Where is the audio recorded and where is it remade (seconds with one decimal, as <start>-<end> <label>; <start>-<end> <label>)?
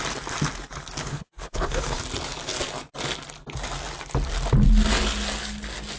0.0-1.0 recorded; 1.0-2.0 remade; 2.0-6.0 recorded